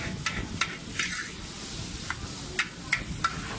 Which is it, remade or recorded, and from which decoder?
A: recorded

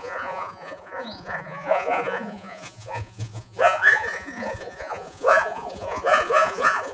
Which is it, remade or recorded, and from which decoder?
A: remade, vocoder, Vocos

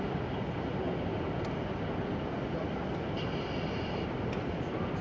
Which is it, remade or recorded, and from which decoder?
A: recorded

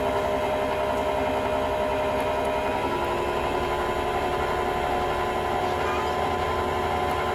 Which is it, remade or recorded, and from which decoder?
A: recorded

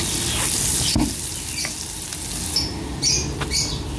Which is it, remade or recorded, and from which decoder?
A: recorded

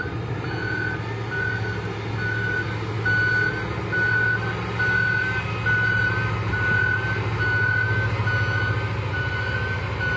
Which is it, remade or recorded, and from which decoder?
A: recorded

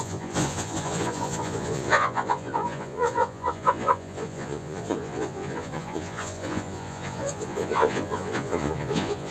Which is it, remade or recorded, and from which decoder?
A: remade, vocoder, Vocos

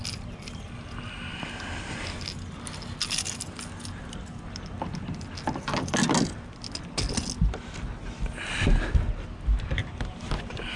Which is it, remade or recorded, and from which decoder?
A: recorded